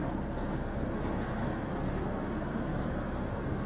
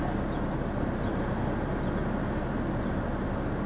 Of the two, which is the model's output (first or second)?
first